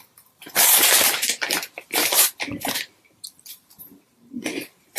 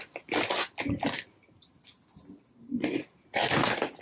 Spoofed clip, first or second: first